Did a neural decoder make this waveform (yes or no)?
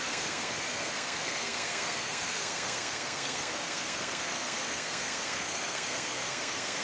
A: yes